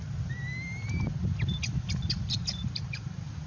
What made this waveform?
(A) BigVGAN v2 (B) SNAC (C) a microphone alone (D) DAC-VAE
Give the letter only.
C